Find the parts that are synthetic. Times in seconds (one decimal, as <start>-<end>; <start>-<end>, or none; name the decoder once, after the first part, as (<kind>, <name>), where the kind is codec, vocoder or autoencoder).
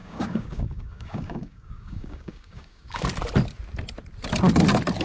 0.0-3.0 (codec, DAC)